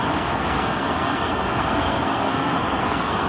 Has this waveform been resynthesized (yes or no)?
yes